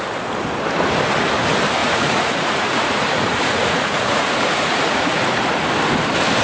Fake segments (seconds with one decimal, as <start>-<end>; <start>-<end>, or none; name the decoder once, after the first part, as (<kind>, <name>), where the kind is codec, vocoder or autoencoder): 1.8-5.6 (vocoder, Vocos)